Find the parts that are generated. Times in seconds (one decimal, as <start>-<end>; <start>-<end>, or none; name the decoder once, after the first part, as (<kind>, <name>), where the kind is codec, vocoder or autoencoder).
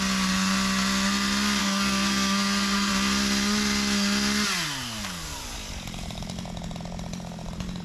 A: 1.6-2.9 (codec, SNAC)